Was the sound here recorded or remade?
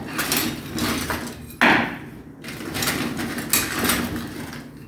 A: recorded